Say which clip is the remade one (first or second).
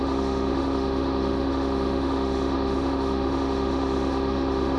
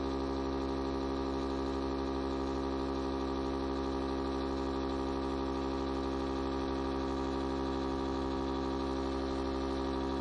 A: first